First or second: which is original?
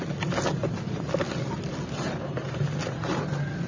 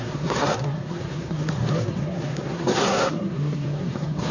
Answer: first